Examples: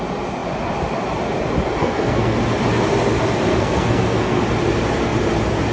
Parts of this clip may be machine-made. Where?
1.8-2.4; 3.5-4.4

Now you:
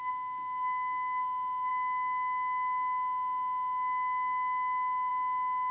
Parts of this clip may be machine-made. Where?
none

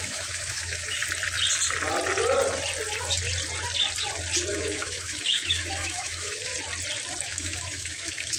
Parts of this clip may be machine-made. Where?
0.0-1.0; 4.5-6.5; 7.2-8.4

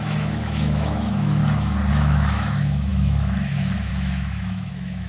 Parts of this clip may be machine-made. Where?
0.0-1.4; 1.9-5.1

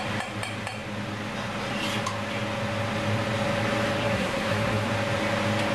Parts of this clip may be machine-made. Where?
4.0-4.9

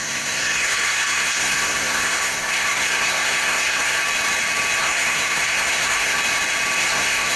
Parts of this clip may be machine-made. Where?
0.0-4.0; 4.8-6.2; 6.8-7.4

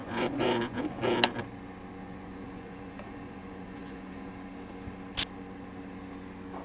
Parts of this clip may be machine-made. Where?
0.0-0.8; 2.0-4.3

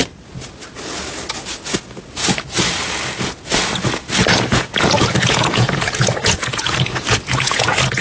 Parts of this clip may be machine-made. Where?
4.5-8.0